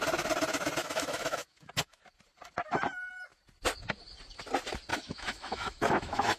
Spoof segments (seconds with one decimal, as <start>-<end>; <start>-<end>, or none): 0.8-2.0; 4.9-6.4

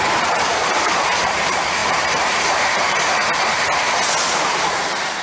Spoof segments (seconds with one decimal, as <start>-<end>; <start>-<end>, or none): 0.0-3.2; 4.7-5.2

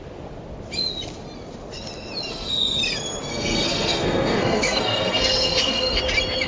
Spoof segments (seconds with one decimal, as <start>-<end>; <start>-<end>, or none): 2.3-2.8; 3.3-6.0